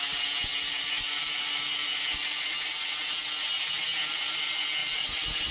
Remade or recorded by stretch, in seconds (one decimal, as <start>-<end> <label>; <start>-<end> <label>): 0.0-0.5 recorded; 0.5-3.8 remade; 3.8-4.8 recorded; 4.8-5.5 remade